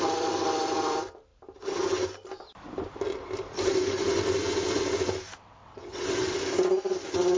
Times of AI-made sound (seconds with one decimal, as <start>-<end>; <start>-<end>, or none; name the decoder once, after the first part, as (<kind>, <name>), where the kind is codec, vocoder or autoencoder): 5.6-6.3 (vocoder, WaveNeXt)